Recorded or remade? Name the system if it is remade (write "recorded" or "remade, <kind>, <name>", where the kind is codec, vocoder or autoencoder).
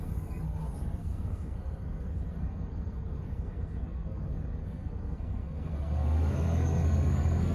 remade, codec, SNAC